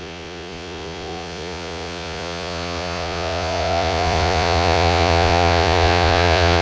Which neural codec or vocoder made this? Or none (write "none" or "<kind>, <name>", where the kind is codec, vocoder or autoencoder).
vocoder, Vocos